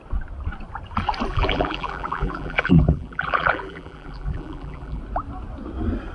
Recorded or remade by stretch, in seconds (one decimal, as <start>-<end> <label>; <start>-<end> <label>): 0.0-1.3 recorded; 1.3-5.0 remade; 5.0-6.1 recorded